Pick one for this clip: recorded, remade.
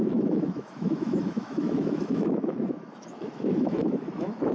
remade